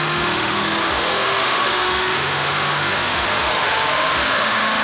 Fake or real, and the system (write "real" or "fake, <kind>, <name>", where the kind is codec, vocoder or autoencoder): fake, autoencoder, DAC-VAE